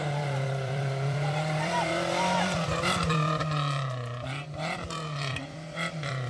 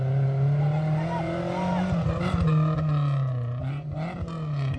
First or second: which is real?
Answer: second